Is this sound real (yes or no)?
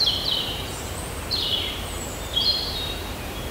no